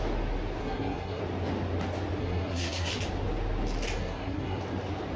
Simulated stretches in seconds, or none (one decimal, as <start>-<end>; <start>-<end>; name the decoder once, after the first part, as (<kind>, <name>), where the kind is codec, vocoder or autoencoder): 0.6-1.2 (codec, SNAC); 2.2-2.9; 4.0-4.6